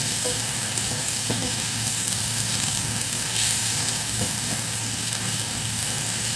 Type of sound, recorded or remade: remade